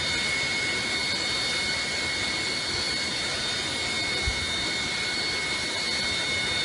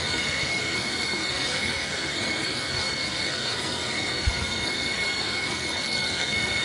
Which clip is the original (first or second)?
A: first